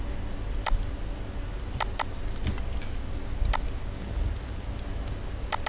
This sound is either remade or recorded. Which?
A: recorded